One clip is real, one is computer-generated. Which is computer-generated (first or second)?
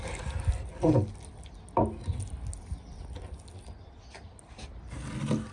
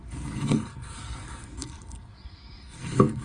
second